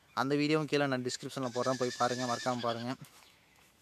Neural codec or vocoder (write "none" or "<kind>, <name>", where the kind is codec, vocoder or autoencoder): autoencoder, DAC-VAE